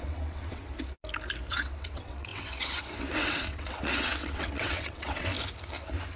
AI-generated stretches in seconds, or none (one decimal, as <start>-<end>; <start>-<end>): 0.0-0.6; 1.5-5.3